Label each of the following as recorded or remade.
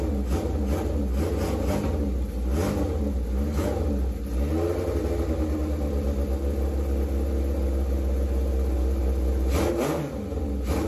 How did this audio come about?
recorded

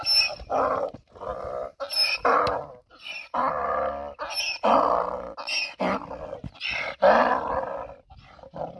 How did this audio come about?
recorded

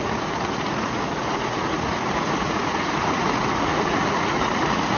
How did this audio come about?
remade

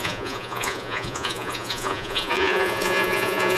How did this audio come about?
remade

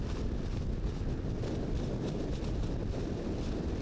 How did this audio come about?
recorded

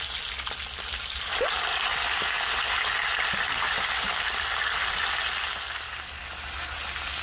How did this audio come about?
recorded